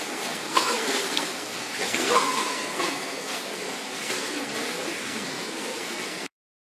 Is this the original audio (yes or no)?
no